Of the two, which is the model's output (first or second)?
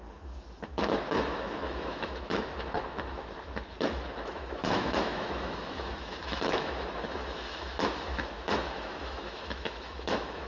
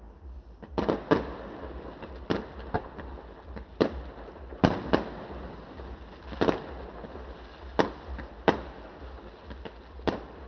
first